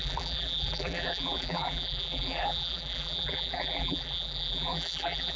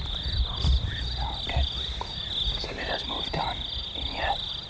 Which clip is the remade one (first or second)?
first